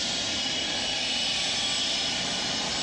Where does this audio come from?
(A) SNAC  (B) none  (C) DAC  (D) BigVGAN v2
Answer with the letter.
B